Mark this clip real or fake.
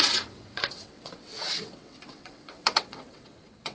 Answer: fake